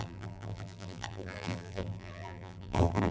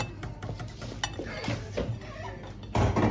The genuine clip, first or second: second